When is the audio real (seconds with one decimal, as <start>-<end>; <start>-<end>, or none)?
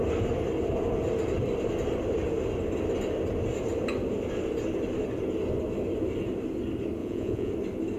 0.0-7.0; 7.5-8.0